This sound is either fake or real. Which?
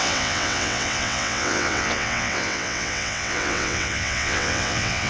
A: fake